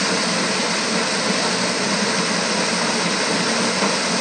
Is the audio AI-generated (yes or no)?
no